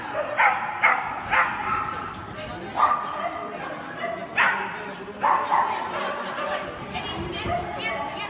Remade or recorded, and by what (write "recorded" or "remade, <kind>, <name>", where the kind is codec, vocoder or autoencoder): recorded